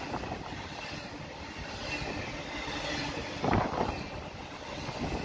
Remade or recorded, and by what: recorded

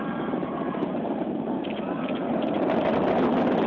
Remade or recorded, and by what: recorded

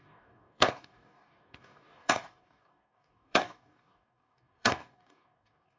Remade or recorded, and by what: remade, codec, DAC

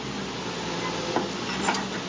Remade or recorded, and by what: recorded